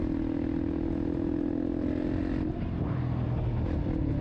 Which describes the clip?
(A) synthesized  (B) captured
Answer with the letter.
B